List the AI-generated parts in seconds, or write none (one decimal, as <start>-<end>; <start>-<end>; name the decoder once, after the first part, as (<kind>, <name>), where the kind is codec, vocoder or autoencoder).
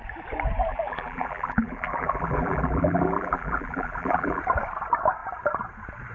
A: 0.7-4.4 (vocoder, BigVGAN v2)